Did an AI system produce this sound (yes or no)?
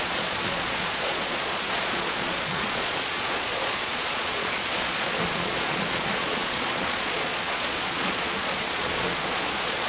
yes